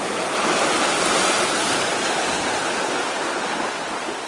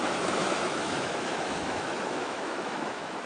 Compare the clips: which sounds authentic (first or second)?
first